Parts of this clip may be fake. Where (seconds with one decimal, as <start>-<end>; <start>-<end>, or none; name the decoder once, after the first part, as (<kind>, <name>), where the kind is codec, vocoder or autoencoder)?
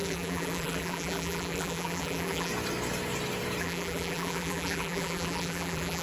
0.0-2.5 (vocoder, BigVGAN v2); 3.6-6.0